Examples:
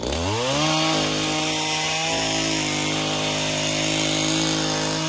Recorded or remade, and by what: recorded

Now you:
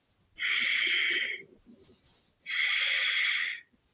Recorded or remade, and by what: recorded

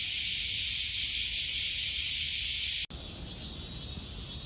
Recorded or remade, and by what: recorded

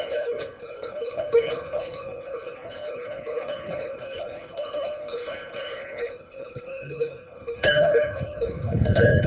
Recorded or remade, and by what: remade, codec, HILCodec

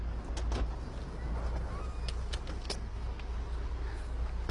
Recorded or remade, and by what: recorded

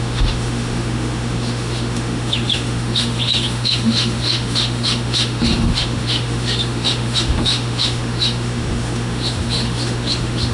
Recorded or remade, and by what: remade, autoencoder, DAC-VAE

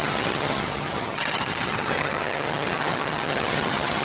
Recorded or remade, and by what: remade, vocoder, HiFi-GAN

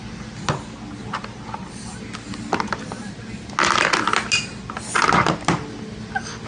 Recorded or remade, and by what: recorded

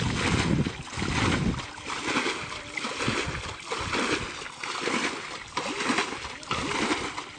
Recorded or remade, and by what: recorded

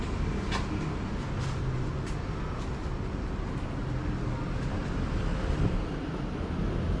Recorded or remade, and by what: recorded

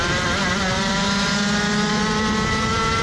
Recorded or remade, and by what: recorded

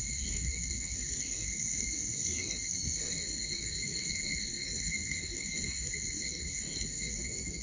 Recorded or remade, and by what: remade, codec, SNAC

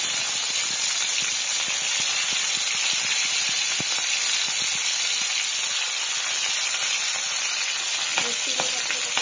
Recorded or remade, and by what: recorded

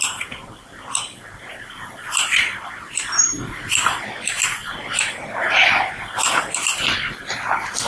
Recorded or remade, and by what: remade, vocoder, BigVGAN v2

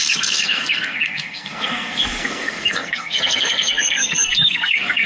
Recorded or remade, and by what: remade, codec, SNAC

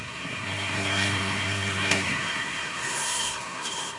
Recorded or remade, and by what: remade, codec, SNAC